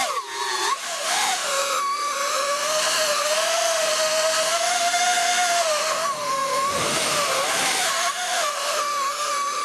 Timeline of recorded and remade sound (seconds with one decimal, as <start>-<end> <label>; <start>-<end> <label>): 0.0-0.7 recorded; 0.7-9.6 remade